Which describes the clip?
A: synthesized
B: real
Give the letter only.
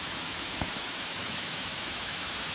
A